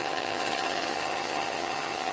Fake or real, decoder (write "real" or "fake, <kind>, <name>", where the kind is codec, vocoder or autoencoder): fake, vocoder, HiFi-GAN